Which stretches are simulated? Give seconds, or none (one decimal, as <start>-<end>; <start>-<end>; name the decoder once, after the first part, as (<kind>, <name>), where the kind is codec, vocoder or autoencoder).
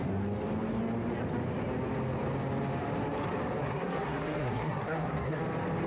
3.6-5.4 (codec, SNAC)